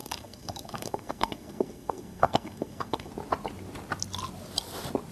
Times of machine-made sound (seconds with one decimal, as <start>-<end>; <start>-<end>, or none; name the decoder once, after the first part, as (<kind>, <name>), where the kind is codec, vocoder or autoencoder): 0.0-3.1 (codec, SNAC)